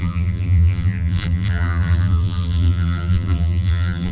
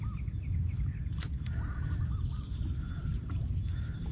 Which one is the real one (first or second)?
second